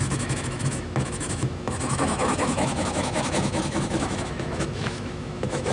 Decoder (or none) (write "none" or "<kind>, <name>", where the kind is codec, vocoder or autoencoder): autoencoder, DAC-VAE